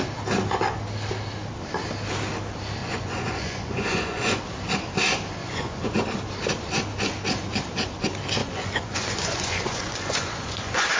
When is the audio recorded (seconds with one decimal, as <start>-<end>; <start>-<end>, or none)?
0.0-2.8; 4.4-5.4; 6.0-8.4